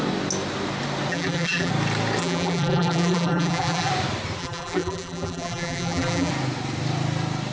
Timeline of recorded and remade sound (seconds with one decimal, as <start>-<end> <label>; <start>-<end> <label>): 0.0-1.1 recorded; 1.1-1.7 remade; 1.7-2.2 recorded; 2.2-3.9 remade; 3.9-4.4 recorded; 4.4-6.3 remade; 6.3-7.5 recorded